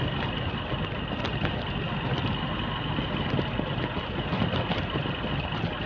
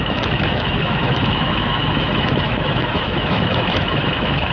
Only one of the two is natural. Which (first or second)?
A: first